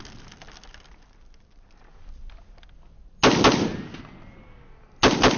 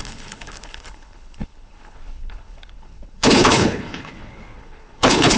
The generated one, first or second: second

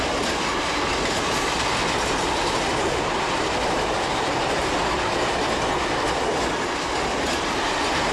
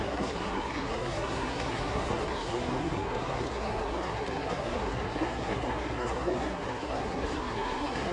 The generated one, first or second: second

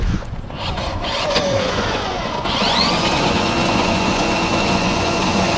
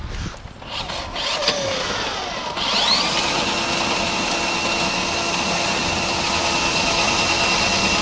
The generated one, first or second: first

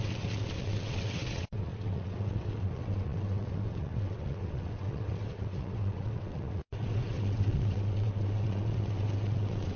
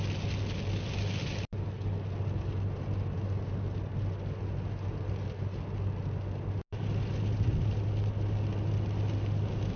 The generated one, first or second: first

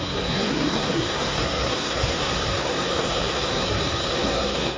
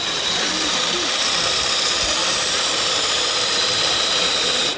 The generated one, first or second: first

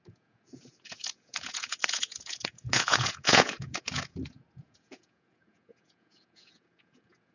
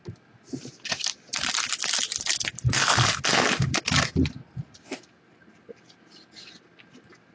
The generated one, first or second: first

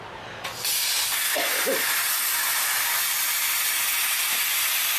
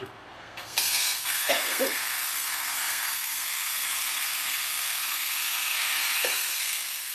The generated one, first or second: second